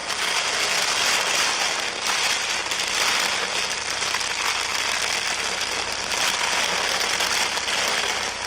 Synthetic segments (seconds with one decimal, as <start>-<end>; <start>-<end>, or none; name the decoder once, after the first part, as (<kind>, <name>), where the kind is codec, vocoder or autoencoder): none